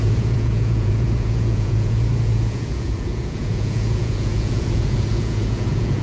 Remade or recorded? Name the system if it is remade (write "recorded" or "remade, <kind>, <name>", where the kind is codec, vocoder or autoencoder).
remade, vocoder, Vocos